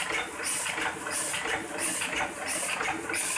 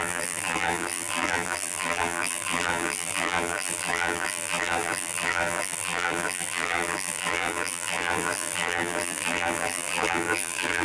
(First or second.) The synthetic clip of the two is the second